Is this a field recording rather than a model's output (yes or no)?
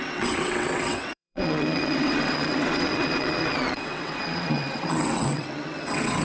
no